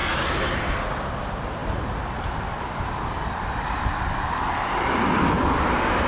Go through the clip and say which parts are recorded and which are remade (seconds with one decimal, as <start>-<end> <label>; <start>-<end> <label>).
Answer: 0.0-1.6 recorded; 1.6-5.3 remade; 5.3-6.1 recorded